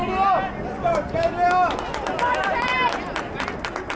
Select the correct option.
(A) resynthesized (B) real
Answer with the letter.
B